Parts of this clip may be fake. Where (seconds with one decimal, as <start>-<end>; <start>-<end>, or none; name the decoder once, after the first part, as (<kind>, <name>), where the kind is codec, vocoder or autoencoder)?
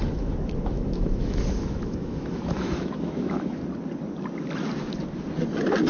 0.0-3.6 (autoencoder, DAC-VAE)